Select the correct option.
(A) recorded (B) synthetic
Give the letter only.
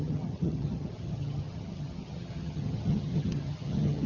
B